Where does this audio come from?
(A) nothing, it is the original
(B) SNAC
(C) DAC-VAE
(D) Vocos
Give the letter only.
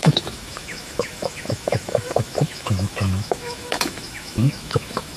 C